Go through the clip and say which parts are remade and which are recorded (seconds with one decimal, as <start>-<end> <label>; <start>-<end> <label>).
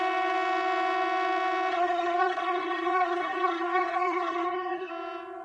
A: 0.0-1.7 recorded; 1.7-4.9 remade; 4.9-5.4 recorded